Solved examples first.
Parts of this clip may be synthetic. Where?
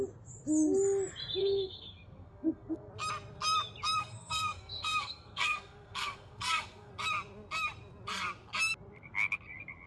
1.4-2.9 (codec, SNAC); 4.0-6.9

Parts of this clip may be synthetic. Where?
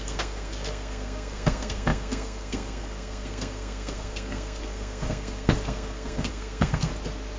0.0-6.9 (codec, SNAC)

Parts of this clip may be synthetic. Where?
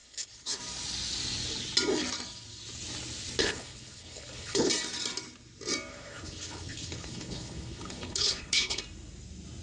0.0-0.6 (codec, HILCodec); 3.4-4.7; 5.9-8.8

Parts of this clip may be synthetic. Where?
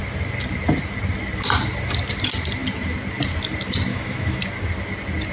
3.9-4.4 (autoencoder, DAC-VAE)